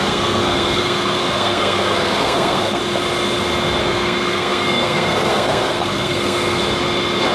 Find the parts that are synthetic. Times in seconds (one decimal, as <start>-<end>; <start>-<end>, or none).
0.0-2.8; 3.8-6.6